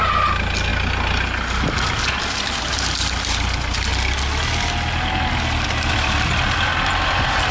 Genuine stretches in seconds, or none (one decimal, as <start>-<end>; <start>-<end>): 0.0-7.5